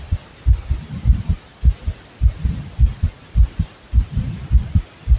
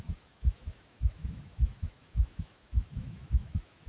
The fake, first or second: second